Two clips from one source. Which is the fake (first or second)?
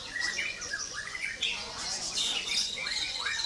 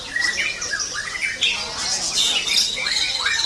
first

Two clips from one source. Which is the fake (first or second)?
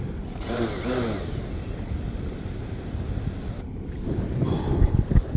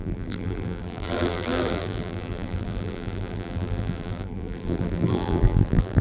second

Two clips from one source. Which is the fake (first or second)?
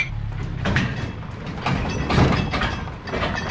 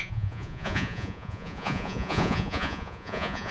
second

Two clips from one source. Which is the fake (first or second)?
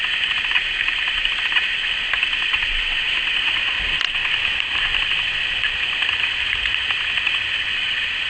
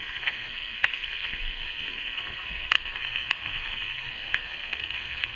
second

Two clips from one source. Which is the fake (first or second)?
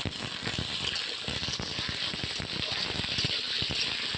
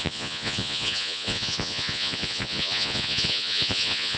second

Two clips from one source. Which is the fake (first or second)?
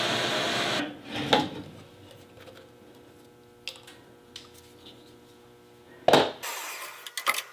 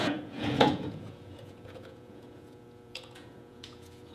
second